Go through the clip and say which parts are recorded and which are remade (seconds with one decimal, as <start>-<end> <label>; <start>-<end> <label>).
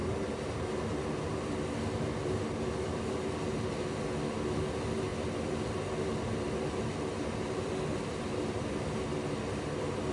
0.0-10.1 recorded